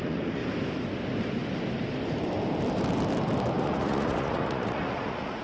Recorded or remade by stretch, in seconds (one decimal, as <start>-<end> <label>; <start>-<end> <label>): 0.0-0.4 remade; 0.4-3.6 recorded; 3.6-5.4 remade